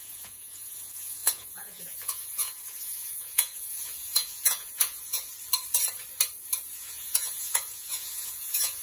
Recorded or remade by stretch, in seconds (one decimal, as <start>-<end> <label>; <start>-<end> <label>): 0.0-5.3 remade; 5.3-6.7 recorded; 6.7-8.8 remade